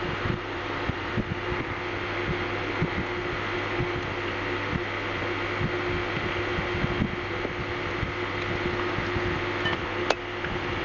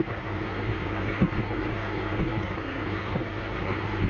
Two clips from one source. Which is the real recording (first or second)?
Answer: first